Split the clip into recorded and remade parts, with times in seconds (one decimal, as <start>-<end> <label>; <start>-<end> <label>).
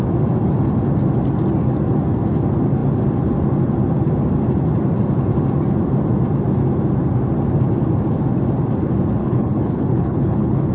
0.0-9.2 recorded; 9.2-10.7 remade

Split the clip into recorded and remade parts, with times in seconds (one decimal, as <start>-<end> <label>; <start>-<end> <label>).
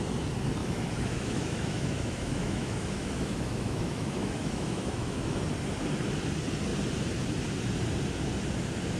0.0-0.6 recorded; 0.6-5.4 remade; 5.4-9.0 recorded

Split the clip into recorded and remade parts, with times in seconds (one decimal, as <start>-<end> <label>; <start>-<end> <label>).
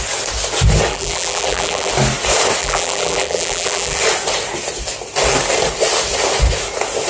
0.0-0.9 recorded; 0.9-1.9 remade; 1.9-2.6 recorded; 2.6-4.0 remade; 4.0-7.1 recorded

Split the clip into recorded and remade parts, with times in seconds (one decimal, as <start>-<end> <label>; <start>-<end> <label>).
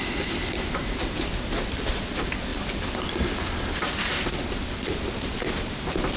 0.0-6.2 recorded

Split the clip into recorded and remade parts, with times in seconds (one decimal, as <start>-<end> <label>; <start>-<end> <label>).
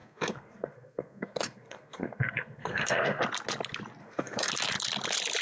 0.0-3.2 remade; 3.2-4.0 recorded; 4.0-4.5 remade; 4.5-5.4 recorded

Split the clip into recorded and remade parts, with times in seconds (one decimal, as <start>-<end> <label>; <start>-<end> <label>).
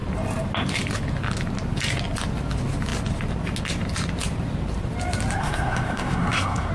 0.0-5.4 recorded; 5.4-6.7 remade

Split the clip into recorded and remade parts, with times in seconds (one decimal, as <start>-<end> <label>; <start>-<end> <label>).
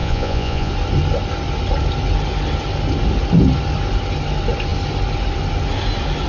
0.0-0.7 remade; 0.7-6.3 recorded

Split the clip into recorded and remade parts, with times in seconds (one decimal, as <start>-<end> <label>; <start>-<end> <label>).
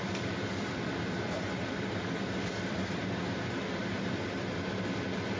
0.0-3.0 remade; 3.0-3.7 recorded; 3.7-5.4 remade